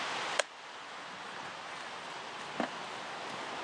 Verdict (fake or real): real